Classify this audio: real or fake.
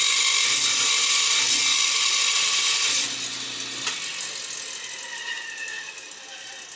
real